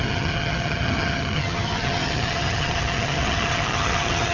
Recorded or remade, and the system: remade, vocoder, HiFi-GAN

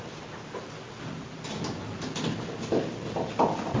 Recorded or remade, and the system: recorded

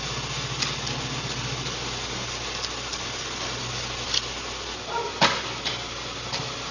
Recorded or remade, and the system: recorded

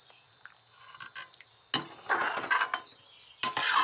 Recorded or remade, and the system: recorded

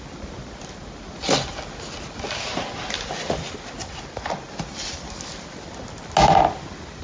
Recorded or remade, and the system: recorded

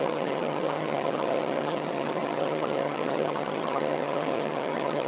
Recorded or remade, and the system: remade, vocoder, HiFi-GAN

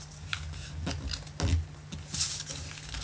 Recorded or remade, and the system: recorded